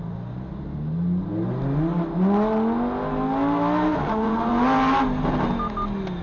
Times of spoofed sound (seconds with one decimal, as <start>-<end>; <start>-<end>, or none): 3.9-4.5